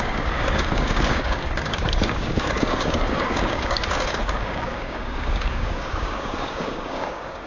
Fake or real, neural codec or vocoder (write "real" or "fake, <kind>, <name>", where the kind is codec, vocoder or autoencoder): fake, codec, DAC